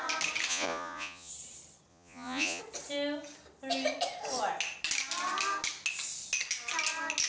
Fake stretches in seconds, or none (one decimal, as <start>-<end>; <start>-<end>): 0.5-1.3; 1.9-2.6